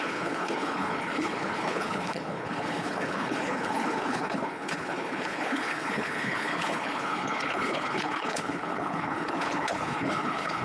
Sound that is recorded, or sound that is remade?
remade